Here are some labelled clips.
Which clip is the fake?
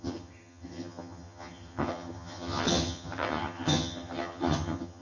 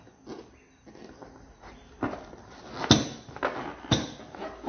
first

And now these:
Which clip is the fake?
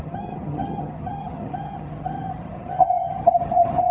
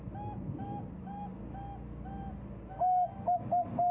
first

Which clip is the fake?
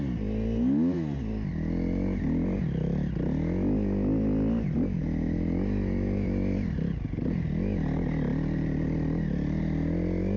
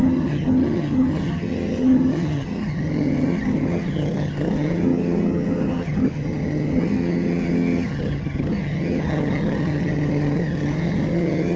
second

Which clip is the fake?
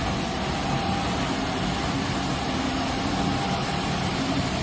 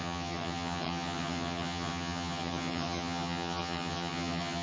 second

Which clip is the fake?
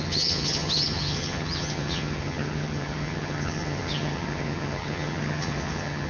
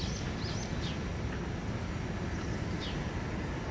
first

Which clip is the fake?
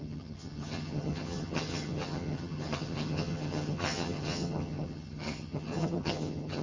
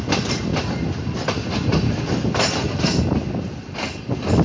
first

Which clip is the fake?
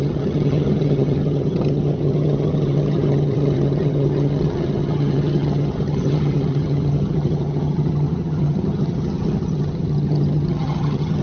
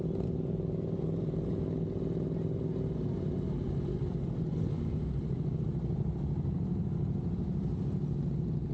first